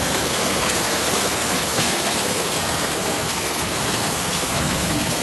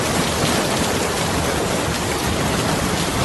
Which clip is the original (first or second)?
second